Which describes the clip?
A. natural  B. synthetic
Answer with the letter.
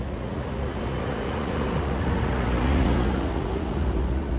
B